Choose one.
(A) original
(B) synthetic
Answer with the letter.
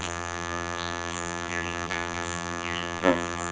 B